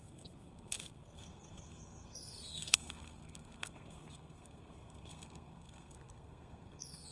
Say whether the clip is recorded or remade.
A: remade